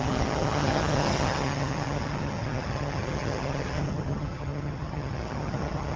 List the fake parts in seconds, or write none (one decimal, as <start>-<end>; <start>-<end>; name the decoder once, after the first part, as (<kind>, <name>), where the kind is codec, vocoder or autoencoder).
0.0-6.0 (vocoder, HiFi-GAN)